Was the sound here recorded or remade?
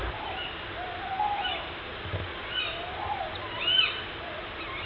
recorded